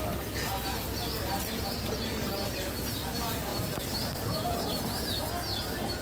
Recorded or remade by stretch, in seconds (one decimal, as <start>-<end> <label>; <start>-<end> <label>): 0.0-6.0 recorded